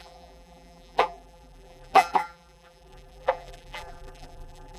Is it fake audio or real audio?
fake